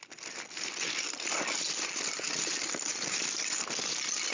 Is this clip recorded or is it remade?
recorded